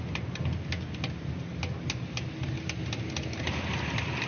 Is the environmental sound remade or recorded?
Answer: recorded